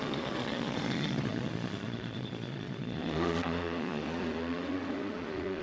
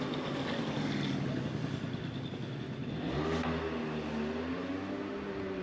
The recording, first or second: second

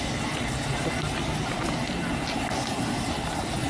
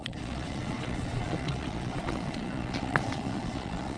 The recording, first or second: first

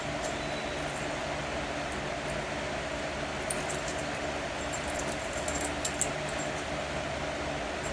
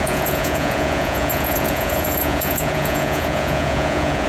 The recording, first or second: first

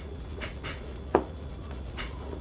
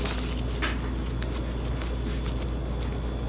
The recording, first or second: second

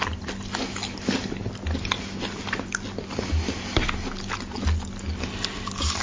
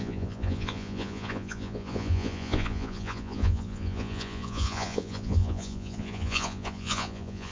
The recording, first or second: first